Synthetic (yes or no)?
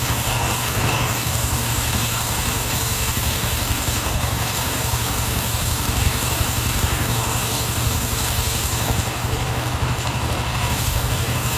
yes